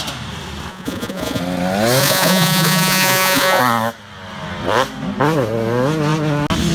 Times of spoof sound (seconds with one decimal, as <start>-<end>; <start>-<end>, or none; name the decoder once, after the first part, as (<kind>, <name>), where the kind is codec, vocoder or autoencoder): 0.7-1.4 (vocoder, Vocos); 2.0-3.6